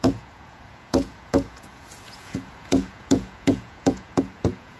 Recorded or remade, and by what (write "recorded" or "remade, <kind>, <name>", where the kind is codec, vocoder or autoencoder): remade, vocoder, Vocos